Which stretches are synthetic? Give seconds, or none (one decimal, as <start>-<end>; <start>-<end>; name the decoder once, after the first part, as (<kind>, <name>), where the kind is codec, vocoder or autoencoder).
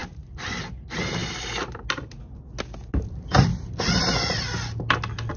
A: none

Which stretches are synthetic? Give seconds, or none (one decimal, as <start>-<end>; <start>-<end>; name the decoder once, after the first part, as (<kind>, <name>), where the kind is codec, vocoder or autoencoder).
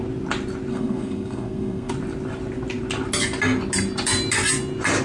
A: 0.7-1.9 (codec, SNAC)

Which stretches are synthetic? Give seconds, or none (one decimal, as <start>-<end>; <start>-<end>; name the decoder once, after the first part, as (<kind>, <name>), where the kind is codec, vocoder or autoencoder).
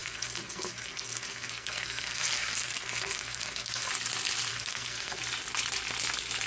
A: 0.0-3.9 (codec, SNAC); 4.5-5.2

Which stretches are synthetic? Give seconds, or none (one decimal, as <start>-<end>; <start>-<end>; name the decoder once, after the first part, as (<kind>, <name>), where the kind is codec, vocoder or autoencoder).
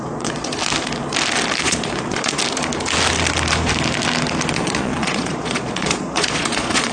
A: 0.0-0.5 (vocoder, Vocos); 1.6-2.3; 4.5-6.9